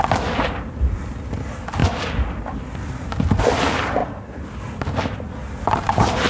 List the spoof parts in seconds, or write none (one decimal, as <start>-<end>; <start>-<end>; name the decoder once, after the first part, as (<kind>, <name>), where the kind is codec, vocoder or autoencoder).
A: none